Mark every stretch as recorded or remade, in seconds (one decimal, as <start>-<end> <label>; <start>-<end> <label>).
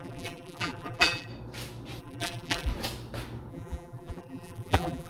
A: 0.0-1.3 remade; 1.3-2.0 recorded; 2.0-2.7 remade; 2.7-3.5 recorded; 3.5-5.1 remade